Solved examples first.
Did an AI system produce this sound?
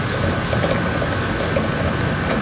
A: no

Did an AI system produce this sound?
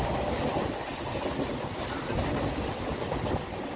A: no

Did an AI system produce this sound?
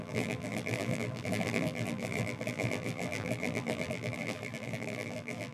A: yes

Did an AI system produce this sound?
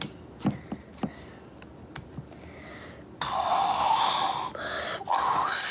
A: no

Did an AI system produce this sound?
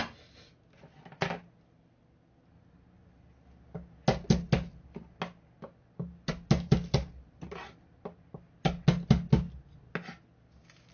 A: no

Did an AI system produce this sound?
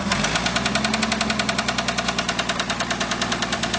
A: no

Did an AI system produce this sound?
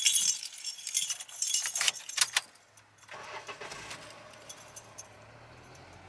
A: no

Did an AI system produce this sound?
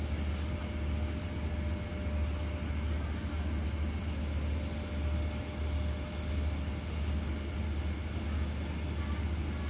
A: no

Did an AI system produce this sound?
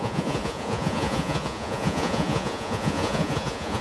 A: yes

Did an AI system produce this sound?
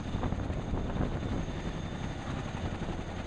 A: no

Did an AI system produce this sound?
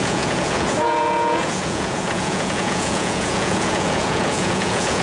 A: yes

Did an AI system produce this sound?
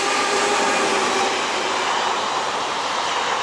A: no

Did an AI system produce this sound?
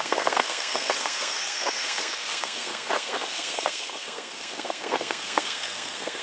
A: yes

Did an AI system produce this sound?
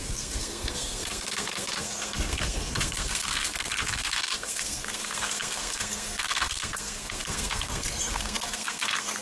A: yes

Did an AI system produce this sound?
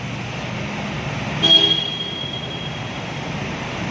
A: no